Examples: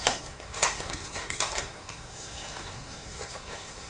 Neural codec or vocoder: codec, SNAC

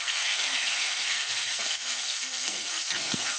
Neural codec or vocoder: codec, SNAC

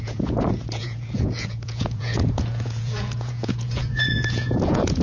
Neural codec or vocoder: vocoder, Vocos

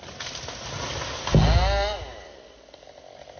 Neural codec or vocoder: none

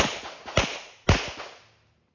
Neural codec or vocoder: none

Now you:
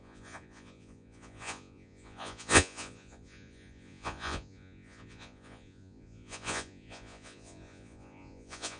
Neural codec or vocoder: vocoder, Vocos